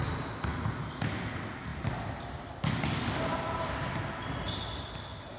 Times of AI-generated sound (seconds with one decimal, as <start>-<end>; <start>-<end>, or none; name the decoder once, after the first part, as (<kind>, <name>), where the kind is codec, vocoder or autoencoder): none